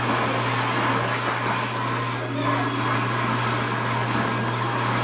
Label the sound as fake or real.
real